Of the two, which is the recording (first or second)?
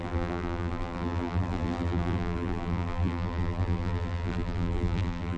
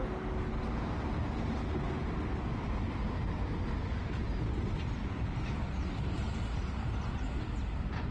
second